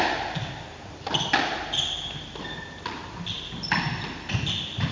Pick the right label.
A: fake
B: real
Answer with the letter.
B